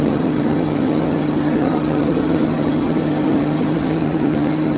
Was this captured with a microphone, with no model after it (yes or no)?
no